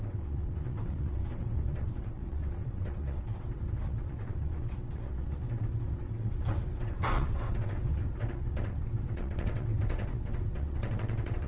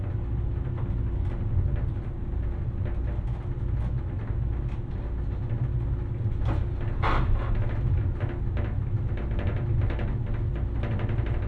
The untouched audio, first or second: second